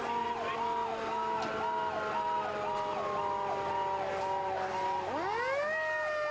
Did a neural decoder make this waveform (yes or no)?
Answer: no